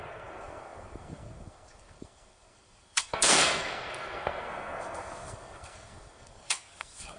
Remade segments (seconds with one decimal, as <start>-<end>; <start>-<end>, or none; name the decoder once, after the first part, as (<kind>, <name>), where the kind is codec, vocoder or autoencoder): 0.0-7.2 (codec, SNAC)